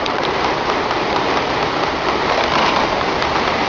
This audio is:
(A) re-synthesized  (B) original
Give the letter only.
B